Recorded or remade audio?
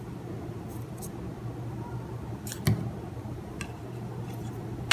recorded